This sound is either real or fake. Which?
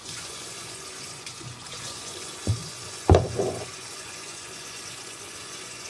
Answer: fake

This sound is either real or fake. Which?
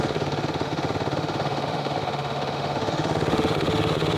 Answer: fake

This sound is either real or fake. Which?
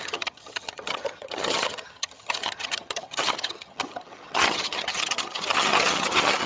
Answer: fake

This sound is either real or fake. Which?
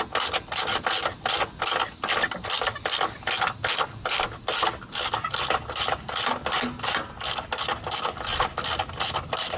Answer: real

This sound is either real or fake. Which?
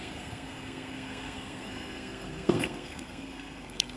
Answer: fake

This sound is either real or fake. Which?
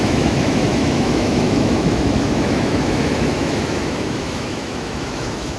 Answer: fake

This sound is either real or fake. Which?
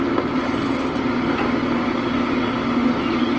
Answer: real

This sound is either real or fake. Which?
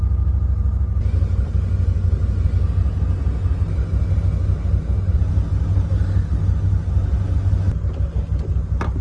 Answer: real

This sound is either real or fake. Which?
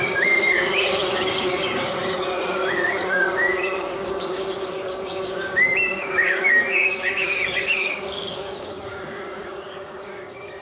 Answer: fake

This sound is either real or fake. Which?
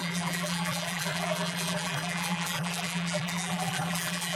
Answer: fake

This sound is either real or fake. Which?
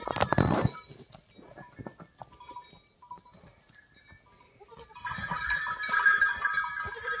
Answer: real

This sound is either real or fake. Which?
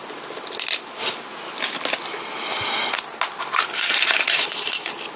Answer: real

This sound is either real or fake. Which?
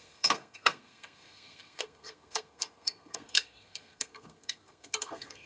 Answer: fake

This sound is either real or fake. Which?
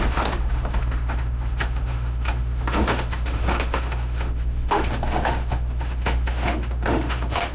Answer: fake